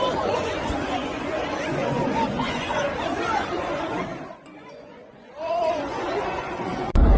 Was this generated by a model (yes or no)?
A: yes